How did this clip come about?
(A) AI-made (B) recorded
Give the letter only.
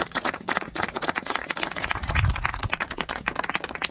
A